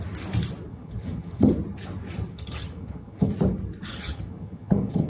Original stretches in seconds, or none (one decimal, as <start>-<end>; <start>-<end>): 0.0-0.7; 1.5-2.3; 3.3-3.9

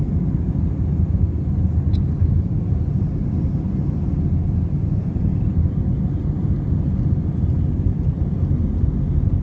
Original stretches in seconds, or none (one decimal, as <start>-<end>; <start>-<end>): 0.0-9.4

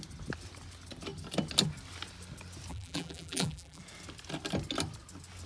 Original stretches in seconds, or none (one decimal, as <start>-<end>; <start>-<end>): 0.0-2.7; 3.8-5.5

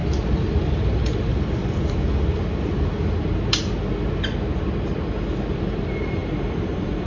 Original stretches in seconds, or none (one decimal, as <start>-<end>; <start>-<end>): 0.0-0.7; 1.3-5.5

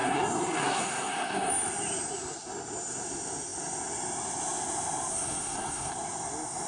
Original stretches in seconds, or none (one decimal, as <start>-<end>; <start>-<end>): 1.5-5.1; 5.9-6.7

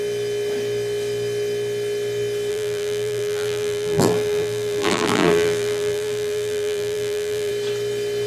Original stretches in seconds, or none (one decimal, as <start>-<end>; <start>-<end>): 0.0-2.5; 7.5-8.3